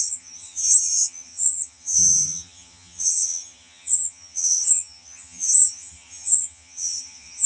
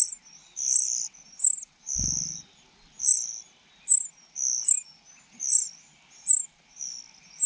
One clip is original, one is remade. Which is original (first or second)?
second